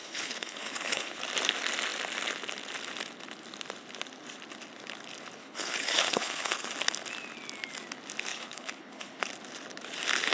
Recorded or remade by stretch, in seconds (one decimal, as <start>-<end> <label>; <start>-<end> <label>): 0.0-1.2 remade; 1.2-5.4 recorded; 5.4-6.7 remade; 6.7-8.3 recorded; 8.3-9.2 remade; 9.2-10.3 recorded